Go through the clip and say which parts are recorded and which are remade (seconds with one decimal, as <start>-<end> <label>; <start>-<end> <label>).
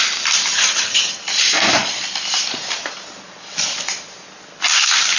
0.0-0.5 recorded; 0.5-1.2 remade; 1.2-5.2 recorded